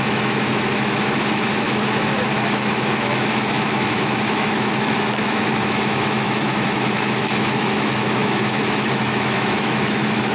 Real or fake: fake